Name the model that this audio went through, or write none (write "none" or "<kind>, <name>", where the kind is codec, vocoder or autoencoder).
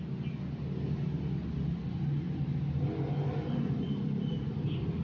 none